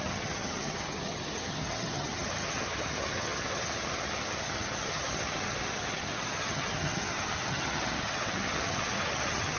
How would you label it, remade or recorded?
remade